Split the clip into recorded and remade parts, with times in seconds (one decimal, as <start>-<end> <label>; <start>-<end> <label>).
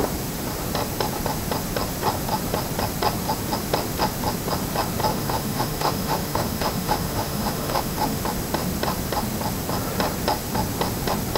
0.0-5.1 recorded; 5.1-8.2 remade; 8.2-11.4 recorded